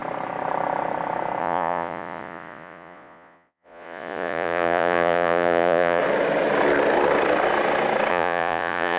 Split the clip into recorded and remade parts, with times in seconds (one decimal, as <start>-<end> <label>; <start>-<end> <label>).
0.0-1.4 recorded; 1.4-6.0 remade; 6.0-8.1 recorded; 8.1-9.0 remade